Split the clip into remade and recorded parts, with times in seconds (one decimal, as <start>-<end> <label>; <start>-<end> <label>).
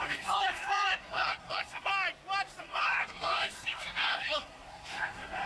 0.0-1.9 remade; 1.9-2.6 recorded; 2.6-5.5 remade